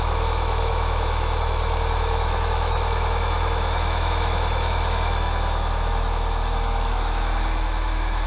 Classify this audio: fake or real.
fake